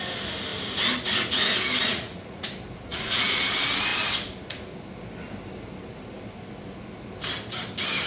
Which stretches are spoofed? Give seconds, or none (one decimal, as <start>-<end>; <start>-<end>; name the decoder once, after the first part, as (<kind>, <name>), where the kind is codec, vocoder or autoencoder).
1.9-2.5 (vocoder, Vocos); 2.9-3.4